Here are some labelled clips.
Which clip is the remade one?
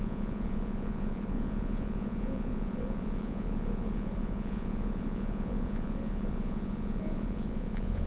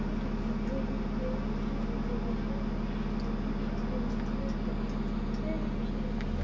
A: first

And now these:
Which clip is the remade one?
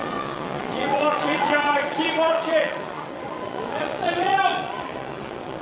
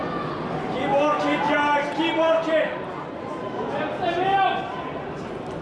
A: first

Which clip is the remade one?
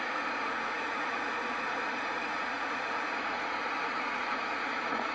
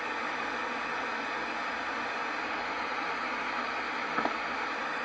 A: first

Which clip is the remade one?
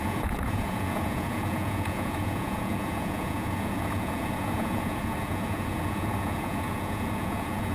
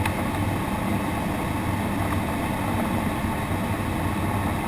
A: first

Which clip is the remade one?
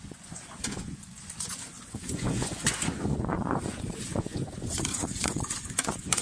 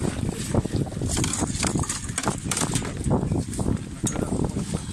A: first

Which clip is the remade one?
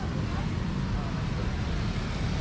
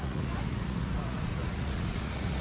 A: second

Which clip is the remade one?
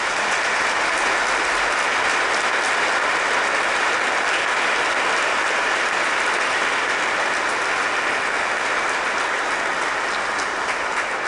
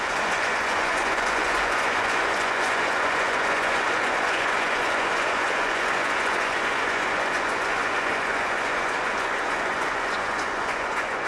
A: second